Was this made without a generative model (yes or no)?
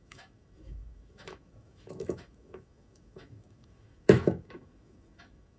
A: no